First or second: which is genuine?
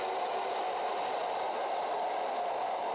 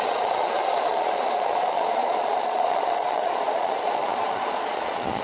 first